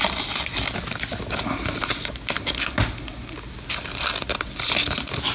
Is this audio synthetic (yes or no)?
no